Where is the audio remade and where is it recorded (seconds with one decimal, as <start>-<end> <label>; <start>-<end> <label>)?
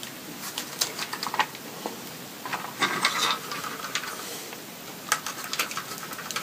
0.0-6.4 recorded